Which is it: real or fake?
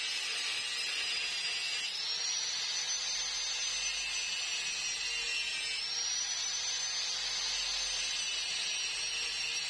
real